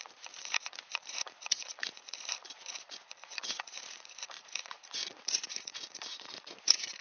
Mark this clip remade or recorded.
remade